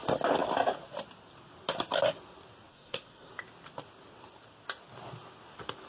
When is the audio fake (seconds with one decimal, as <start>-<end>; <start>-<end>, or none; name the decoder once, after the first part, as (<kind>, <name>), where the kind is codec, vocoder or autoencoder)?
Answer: 2.7-3.3 (codec, SNAC)